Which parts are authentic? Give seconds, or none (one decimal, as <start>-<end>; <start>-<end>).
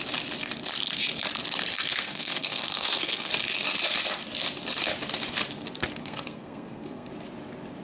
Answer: 0.0-1.7; 3.3-6.0; 7.1-7.8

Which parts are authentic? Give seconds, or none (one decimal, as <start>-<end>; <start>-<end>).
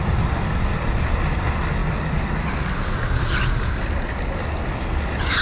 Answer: 0.0-5.4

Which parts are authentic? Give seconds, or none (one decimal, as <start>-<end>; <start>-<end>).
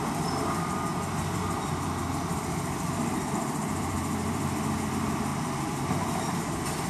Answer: 5.3-6.5